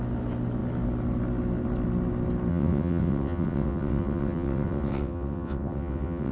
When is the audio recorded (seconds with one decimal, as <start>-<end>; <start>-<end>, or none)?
0.0-2.5